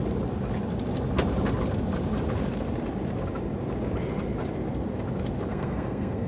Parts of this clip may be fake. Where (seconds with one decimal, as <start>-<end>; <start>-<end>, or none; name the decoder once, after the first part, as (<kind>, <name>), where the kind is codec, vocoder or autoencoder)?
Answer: 5.5-6.3 (codec, SNAC)